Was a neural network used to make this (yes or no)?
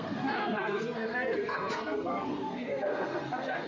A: yes